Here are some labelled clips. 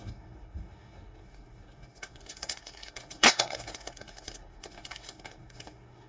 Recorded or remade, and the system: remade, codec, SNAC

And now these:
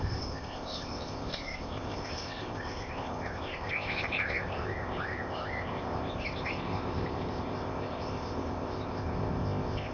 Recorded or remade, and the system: remade, codec, ZipCodec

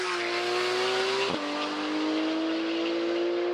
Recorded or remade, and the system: recorded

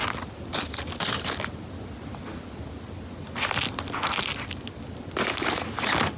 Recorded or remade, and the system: recorded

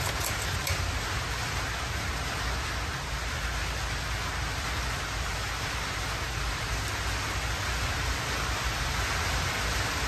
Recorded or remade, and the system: recorded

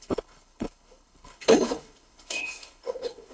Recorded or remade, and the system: remade, codec, HILCodec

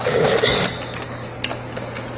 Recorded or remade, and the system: recorded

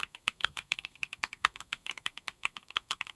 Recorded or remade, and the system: remade, codec, SNAC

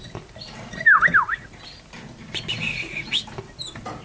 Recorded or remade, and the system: recorded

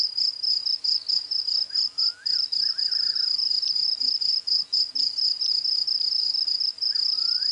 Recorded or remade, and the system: recorded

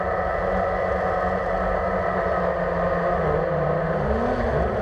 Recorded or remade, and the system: recorded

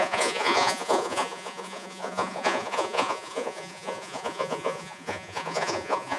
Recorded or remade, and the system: remade, vocoder, Vocos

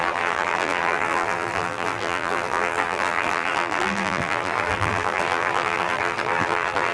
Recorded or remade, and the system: remade, vocoder, BigVGAN v2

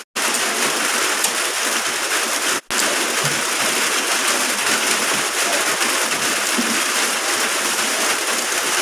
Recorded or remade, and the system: recorded